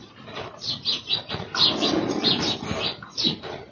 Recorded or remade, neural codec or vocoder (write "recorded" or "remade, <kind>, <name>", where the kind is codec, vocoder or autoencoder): recorded